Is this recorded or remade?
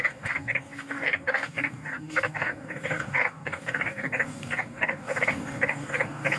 remade